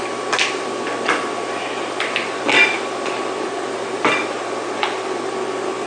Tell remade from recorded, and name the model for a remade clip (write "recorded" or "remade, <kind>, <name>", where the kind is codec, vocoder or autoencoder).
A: recorded